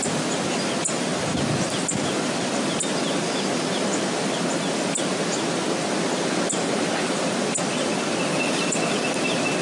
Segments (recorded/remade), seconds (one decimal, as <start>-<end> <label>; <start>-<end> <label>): 0.0-9.6 recorded